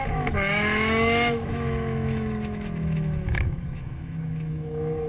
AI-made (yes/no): yes